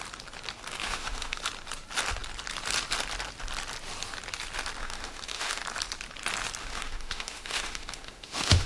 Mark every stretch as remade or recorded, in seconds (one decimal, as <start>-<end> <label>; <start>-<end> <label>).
0.0-0.8 recorded; 0.8-1.4 remade; 1.4-4.8 recorded; 4.8-5.6 remade; 5.6-6.6 recorded; 6.6-8.7 remade